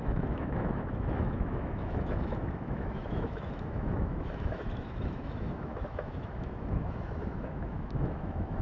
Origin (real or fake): fake